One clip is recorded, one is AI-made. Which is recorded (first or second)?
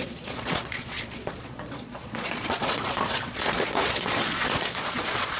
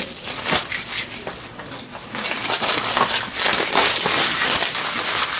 second